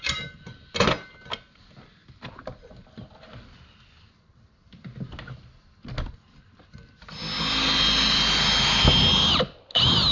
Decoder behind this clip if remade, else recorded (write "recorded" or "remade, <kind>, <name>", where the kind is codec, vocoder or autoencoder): recorded